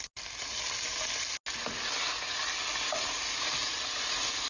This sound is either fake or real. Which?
real